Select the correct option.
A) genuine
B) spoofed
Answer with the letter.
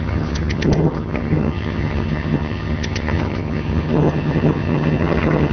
B